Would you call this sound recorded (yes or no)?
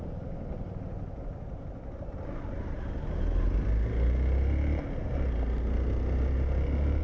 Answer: yes